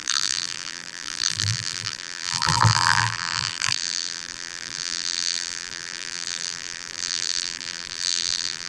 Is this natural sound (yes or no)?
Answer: no